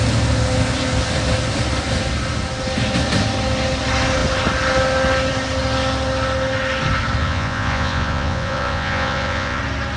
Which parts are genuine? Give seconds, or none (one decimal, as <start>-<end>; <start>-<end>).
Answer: 0.0-7.2; 9.6-10.0